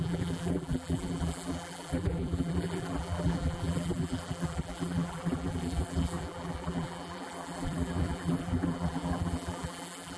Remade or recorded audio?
remade